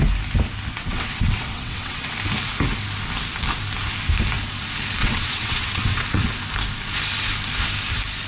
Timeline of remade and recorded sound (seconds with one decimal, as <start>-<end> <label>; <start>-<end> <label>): 0.0-0.7 recorded; 0.7-2.1 remade; 2.1-5.0 recorded; 5.0-6.3 remade; 6.3-8.3 recorded